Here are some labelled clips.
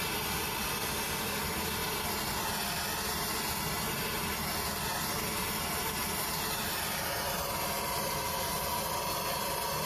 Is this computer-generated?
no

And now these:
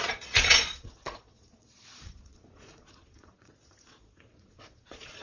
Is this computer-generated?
yes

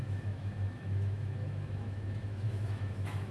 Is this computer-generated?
yes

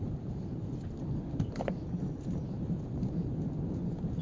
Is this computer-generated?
no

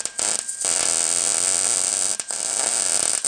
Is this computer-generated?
no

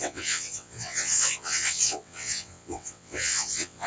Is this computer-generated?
yes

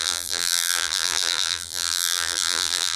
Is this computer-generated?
yes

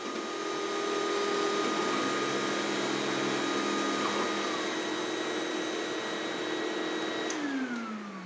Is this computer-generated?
no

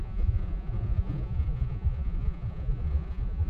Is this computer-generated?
yes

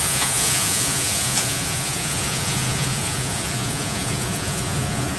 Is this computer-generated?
yes